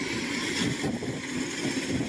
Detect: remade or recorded recorded